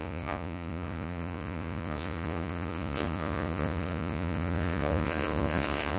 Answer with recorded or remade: remade